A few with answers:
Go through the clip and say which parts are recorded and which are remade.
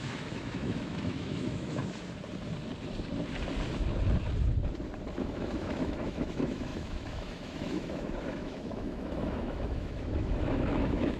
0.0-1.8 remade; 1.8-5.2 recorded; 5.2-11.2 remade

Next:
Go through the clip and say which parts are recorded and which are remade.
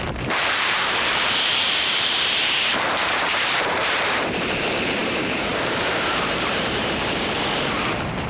0.0-8.3 remade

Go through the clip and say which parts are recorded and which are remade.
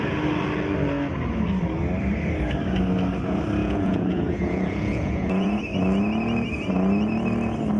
0.0-3.6 recorded; 3.6-5.6 remade; 5.6-7.8 recorded